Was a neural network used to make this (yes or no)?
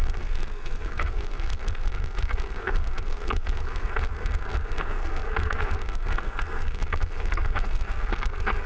yes